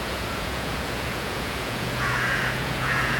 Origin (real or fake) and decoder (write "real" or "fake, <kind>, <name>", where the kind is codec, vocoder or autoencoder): fake, vocoder, Vocos